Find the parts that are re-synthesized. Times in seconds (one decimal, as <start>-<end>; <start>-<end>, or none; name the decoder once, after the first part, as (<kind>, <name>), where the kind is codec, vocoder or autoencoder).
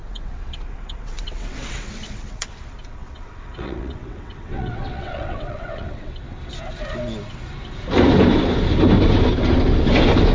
0.0-2.6 (vocoder, WaveNeXt); 3.0-6.1